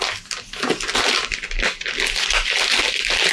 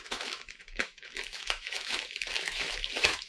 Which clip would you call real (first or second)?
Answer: first